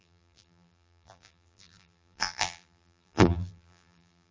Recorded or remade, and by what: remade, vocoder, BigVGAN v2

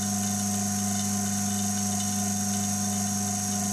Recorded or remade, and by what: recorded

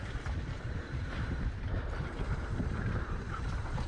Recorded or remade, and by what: remade, vocoder, BigVGAN v2